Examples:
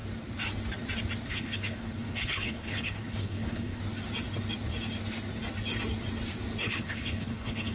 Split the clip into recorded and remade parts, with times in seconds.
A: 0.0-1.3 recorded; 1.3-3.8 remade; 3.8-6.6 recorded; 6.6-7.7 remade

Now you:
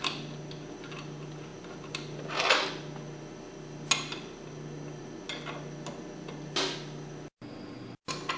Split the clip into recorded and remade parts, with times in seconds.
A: 0.0-8.4 recorded

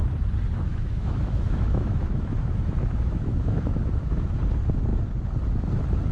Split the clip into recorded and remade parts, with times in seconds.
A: 0.0-0.7 recorded; 0.7-4.4 remade; 4.4-6.1 recorded

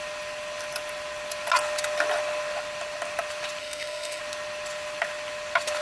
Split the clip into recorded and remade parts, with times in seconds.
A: 0.0-3.6 recorded; 3.6-4.2 remade; 4.2-5.8 recorded